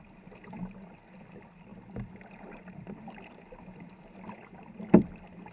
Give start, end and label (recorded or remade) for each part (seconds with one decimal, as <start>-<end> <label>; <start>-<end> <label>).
0.0-5.5 recorded